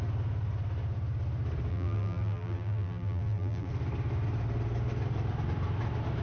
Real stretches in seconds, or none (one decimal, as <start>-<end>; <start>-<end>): 0.0-1.7; 3.7-6.2